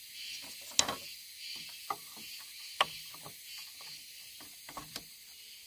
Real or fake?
real